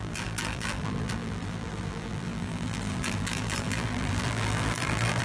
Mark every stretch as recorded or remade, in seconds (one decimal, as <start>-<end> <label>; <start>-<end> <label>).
0.0-5.2 remade